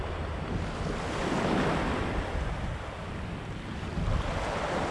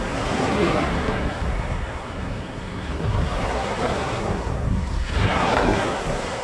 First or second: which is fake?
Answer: second